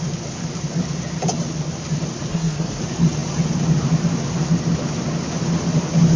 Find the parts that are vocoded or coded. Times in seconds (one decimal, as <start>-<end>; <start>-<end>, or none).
2.3-2.8